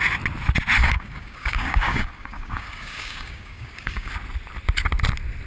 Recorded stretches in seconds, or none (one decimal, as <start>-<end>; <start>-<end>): 0.0-0.8; 4.1-5.5